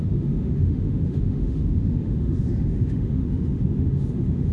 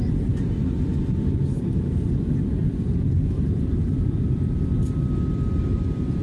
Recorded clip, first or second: second